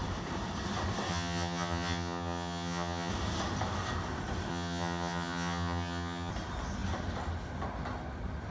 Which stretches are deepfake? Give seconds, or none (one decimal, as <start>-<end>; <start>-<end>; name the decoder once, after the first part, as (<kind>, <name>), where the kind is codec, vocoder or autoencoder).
1.1-3.1 (vocoder, HiFi-GAN); 4.5-6.3